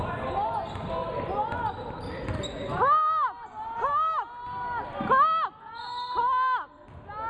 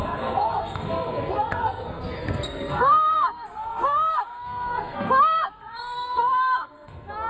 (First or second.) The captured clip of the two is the first